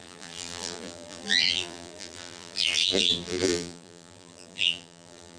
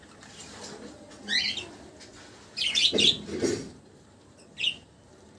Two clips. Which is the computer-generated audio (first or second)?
first